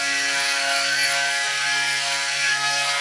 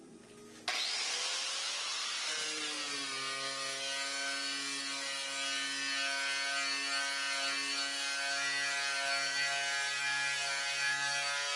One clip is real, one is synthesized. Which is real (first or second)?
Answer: second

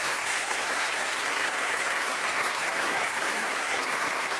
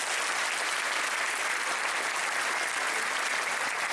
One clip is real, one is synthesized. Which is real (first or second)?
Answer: second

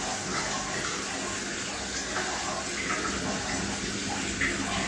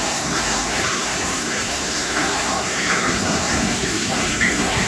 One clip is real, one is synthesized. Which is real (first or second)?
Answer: first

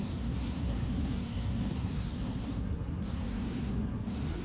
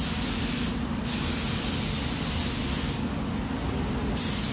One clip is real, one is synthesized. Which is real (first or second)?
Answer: second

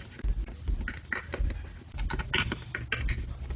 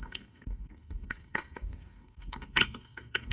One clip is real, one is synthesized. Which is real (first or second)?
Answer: first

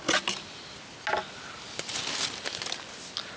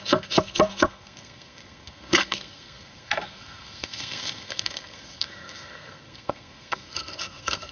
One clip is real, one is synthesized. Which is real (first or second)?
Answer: first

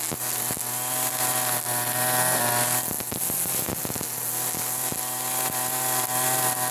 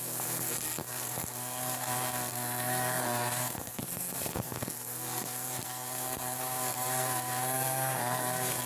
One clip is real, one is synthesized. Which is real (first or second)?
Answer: first